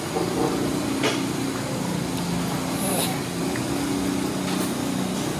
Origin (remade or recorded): recorded